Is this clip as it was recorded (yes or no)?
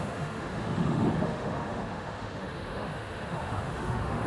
no